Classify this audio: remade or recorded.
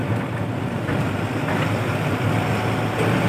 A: recorded